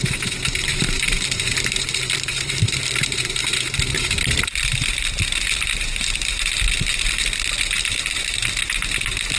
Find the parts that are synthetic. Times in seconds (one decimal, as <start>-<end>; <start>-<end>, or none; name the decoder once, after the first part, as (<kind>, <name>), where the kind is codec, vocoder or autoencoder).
0.7-4.5 (vocoder, BigVGAN v2)